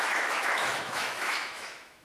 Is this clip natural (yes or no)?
no